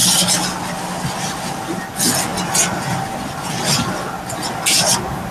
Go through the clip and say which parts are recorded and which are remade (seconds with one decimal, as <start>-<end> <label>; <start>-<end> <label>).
0.0-1.3 remade; 1.3-2.3 recorded; 2.3-4.2 remade; 4.2-5.3 recorded